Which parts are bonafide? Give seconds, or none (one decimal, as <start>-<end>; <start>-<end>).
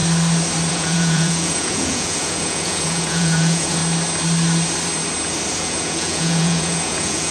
0.0-0.7; 3.8-5.5